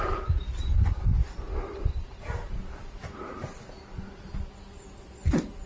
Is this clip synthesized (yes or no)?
no